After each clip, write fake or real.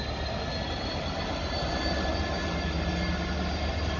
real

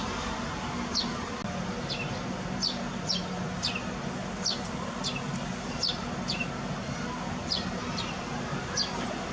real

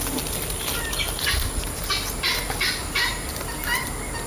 real